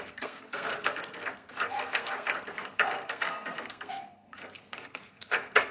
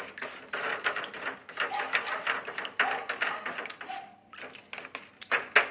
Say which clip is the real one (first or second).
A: second